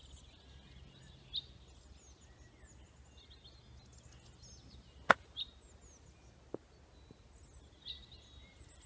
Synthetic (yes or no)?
no